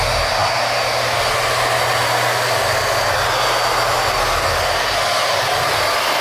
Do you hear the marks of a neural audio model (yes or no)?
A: no